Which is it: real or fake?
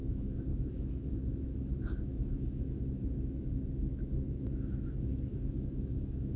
fake